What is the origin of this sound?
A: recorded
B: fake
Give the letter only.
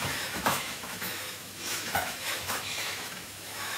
B